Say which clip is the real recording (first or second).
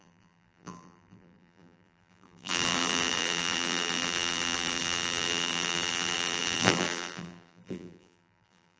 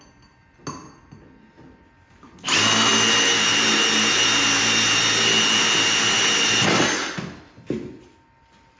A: second